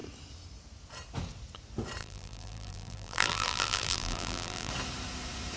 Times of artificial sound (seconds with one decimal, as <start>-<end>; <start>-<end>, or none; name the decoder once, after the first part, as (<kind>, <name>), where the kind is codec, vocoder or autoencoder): 2.0-4.7 (vocoder, BigVGAN v2)